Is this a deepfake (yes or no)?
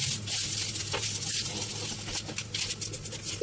no